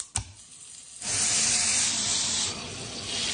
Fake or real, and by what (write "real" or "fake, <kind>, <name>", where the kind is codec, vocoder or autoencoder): real